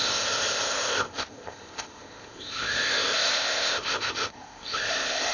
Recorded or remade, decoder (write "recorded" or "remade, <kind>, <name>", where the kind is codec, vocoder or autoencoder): remade, codec, ZipCodec